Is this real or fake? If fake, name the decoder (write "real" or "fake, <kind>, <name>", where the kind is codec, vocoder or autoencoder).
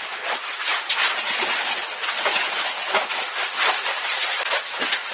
real